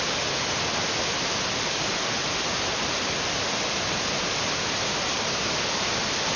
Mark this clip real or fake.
real